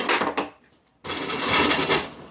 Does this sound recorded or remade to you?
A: recorded